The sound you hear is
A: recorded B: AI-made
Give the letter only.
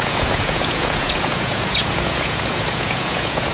B